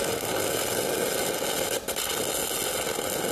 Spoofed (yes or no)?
no